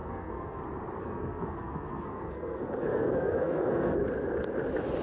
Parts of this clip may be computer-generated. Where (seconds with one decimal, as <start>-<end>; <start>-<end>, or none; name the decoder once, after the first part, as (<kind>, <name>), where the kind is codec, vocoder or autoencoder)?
0.0-0.6 (codec, SNAC); 1.0-4.0